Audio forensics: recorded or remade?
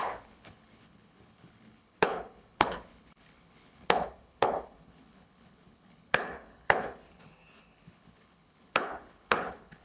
remade